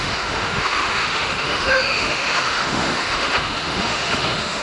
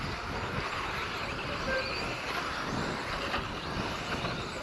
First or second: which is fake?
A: first